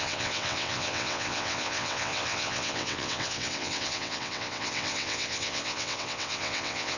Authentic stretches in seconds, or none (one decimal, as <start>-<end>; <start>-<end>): none